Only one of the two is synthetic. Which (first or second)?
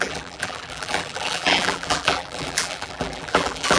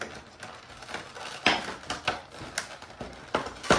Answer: first